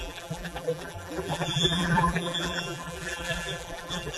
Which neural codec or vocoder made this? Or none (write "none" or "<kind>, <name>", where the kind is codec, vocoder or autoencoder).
vocoder, BigVGAN v2